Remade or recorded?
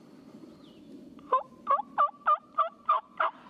recorded